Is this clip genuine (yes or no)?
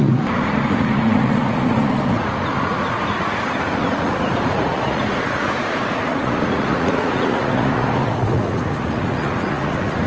no